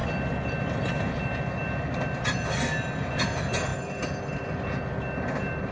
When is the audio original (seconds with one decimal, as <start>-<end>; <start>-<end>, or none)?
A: 0.0-5.7